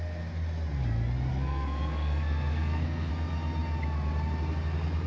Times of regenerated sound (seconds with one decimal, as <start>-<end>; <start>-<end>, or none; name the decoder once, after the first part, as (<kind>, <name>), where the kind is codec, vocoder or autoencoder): 1.3-3.1 (codec, SNAC)